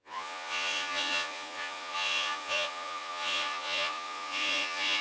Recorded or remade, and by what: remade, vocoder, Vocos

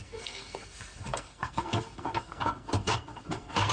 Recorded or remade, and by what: remade, codec, SNAC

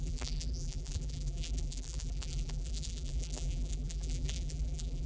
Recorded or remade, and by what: remade, vocoder, BigVGAN v2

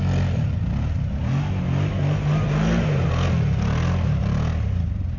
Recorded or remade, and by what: recorded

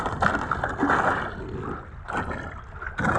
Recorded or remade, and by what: recorded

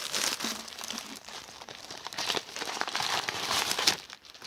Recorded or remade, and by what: remade, vocoder, BigVGAN v2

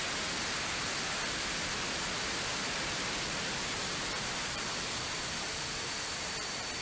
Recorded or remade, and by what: remade, vocoder, BigVGAN v2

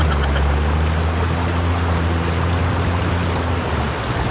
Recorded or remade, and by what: recorded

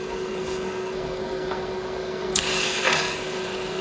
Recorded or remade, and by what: remade, codec, SNAC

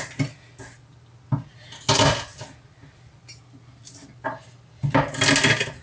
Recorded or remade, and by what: recorded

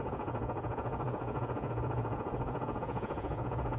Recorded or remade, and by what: remade, vocoder, Vocos